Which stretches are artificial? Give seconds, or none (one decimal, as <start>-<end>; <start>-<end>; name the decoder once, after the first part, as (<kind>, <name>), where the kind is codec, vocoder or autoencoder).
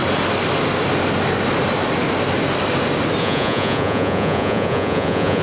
3.2-5.4 (vocoder, Vocos)